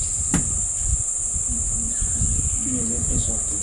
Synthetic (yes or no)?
no